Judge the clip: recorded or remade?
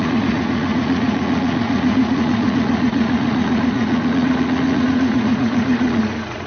remade